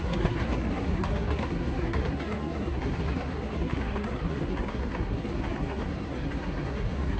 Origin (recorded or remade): remade